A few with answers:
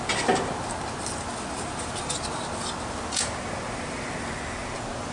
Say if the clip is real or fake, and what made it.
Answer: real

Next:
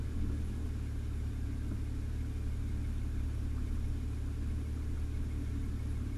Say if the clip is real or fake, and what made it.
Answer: real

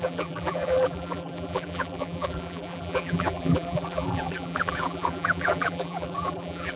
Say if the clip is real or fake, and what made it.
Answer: fake, vocoder, BigVGAN v2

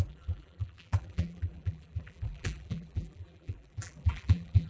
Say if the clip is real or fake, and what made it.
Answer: fake, vocoder, BigVGAN v2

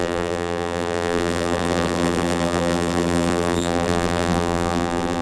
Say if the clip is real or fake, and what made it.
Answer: fake, vocoder, BigVGAN v2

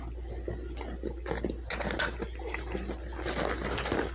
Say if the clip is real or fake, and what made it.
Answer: real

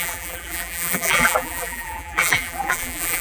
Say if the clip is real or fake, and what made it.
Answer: fake, vocoder, BigVGAN v2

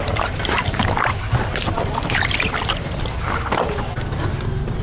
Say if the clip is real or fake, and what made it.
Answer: fake, vocoder, BigVGAN v2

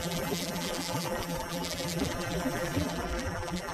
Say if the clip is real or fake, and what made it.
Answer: fake, vocoder, BigVGAN v2